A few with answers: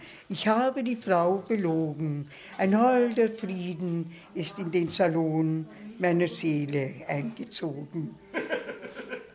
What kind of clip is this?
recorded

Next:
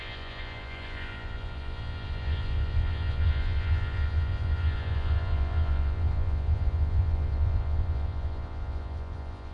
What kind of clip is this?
remade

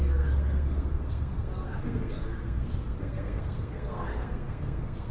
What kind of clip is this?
remade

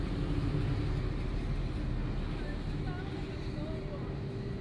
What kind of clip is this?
recorded